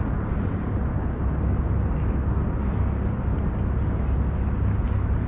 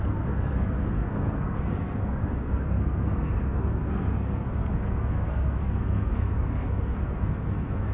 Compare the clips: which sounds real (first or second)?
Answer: first